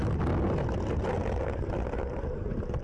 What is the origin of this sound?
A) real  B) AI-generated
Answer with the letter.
A